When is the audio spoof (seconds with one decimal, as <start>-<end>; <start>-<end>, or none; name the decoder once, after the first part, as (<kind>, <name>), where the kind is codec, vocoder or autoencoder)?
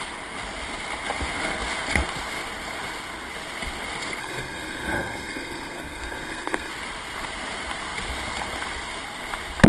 4.2-6.7 (codec, SNAC)